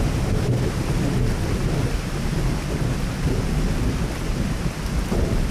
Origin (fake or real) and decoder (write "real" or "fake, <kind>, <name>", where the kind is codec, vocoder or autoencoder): real